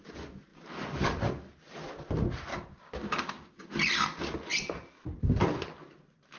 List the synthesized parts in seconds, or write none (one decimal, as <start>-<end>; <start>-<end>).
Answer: 2.5-3.7